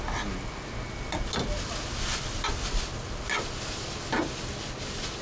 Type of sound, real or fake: real